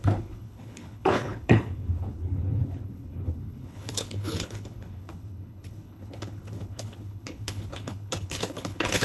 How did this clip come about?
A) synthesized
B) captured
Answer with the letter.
A